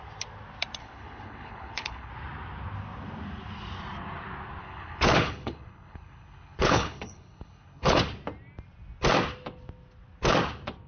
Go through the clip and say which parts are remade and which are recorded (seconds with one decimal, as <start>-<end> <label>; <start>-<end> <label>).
0.0-0.8 recorded; 0.8-2.1 remade; 2.1-4.6 recorded; 4.6-8.0 remade; 8.0-10.9 recorded